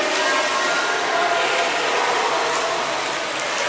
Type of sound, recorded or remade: recorded